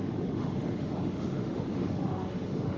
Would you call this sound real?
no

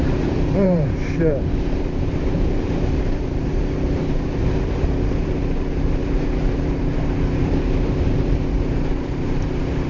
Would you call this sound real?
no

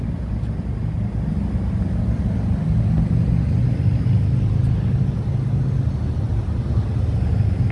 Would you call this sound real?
yes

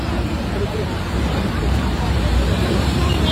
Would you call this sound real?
no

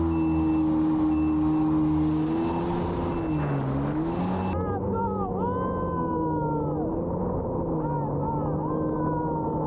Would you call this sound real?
yes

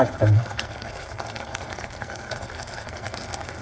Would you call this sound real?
no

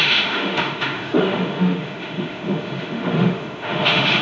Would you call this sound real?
no